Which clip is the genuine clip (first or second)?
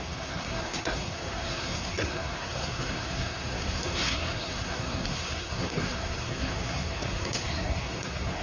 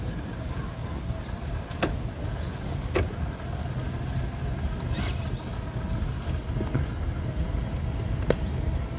second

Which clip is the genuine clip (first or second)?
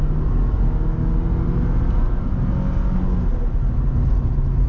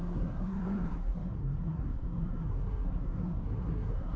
first